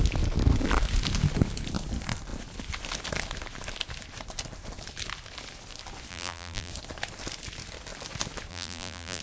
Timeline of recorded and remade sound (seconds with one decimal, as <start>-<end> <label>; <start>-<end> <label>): 0.0-6.1 recorded; 6.1-6.7 remade; 6.7-8.5 recorded; 8.5-9.2 remade